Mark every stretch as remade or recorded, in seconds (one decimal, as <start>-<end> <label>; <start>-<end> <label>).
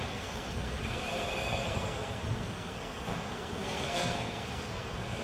0.0-5.2 remade